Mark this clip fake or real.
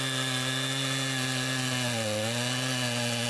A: real